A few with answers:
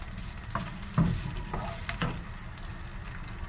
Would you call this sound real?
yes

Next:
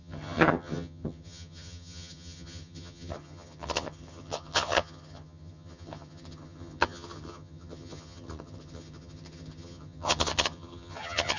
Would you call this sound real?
no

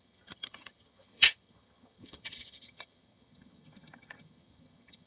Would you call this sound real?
no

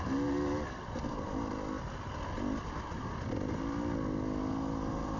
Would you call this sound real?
yes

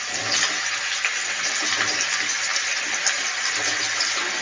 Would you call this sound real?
yes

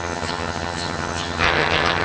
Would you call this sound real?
no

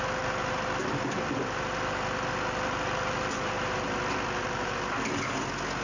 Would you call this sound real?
yes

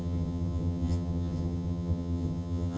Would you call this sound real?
no